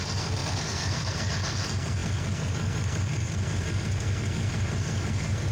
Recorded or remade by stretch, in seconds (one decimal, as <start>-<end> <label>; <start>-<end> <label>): 0.0-5.5 remade